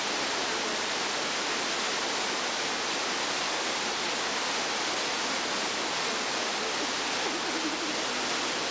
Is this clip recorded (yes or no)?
yes